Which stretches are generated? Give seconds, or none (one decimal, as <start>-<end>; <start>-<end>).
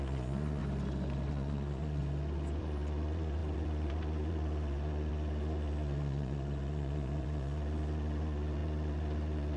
0.0-0.6; 1.3-2.0; 2.6-9.6